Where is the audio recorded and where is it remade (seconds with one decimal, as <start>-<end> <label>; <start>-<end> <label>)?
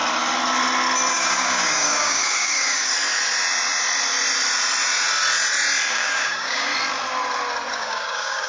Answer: 0.0-1.1 recorded; 1.1-2.9 remade; 2.9-5.9 recorded; 5.9-6.7 remade; 6.7-7.7 recorded; 7.7-8.5 remade